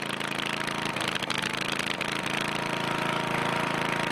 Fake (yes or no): no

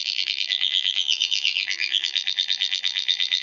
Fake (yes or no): yes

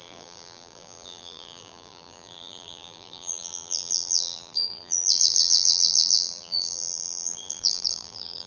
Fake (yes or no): yes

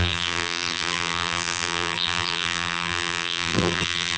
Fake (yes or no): yes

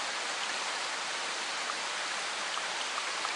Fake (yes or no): no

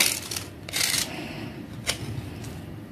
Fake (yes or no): yes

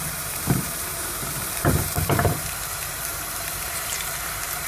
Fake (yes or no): yes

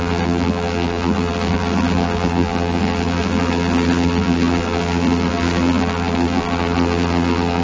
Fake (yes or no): yes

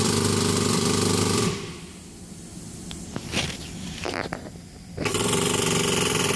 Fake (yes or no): no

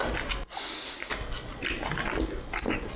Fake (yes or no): no